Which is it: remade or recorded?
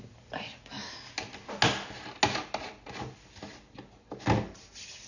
recorded